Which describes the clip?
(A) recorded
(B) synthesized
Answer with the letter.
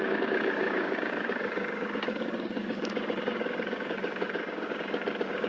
B